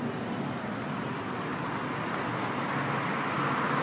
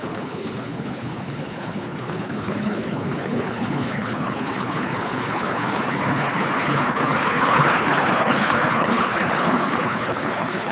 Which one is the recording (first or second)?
first